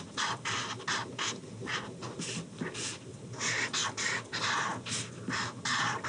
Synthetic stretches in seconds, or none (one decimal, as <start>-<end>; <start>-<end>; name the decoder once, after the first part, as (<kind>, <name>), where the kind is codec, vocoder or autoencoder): 0.0-1.7 (vocoder, BigVGAN v2); 4.0-6.1